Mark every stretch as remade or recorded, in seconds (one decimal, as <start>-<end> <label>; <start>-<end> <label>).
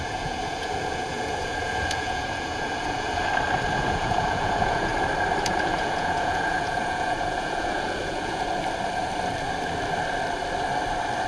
0.0-3.2 remade; 3.2-3.7 recorded; 3.7-4.9 remade; 4.9-5.4 recorded; 5.4-8.5 remade; 8.5-11.3 recorded